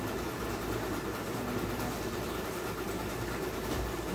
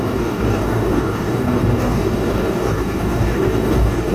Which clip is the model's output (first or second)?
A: second